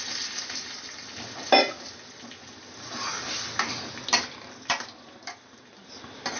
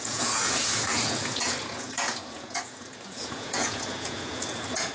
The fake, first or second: second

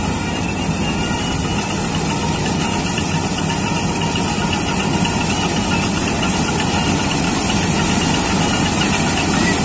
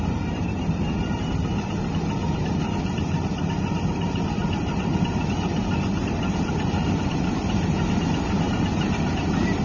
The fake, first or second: second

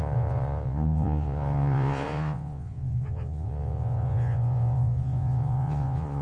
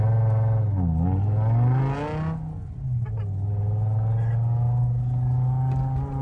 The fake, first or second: first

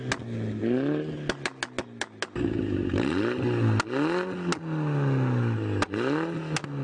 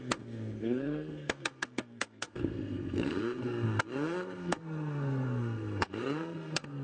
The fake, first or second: second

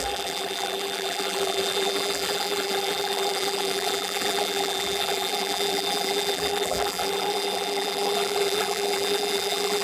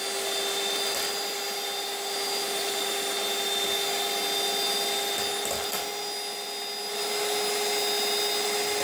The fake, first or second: first